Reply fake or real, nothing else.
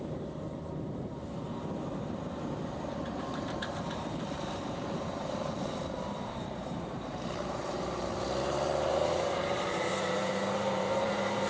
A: fake